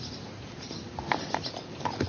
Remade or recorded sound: recorded